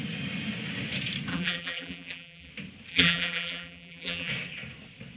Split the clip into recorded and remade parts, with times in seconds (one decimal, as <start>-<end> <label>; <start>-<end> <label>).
0.0-1.3 recorded; 1.3-2.5 remade; 2.5-2.9 recorded; 2.9-4.3 remade; 4.3-5.2 recorded